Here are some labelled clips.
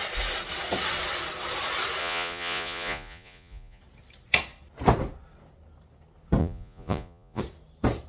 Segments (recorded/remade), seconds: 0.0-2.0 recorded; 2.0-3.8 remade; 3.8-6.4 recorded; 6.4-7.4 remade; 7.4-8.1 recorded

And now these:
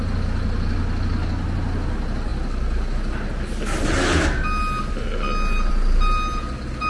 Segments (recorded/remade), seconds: 0.0-6.9 recorded